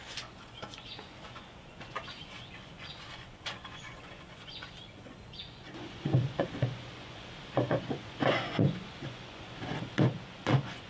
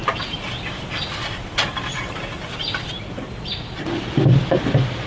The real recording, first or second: second